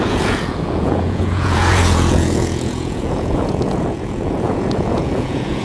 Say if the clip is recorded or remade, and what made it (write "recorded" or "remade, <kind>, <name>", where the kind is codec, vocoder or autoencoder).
remade, vocoder, Vocos